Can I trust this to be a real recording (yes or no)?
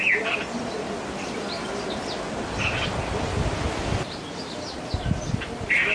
yes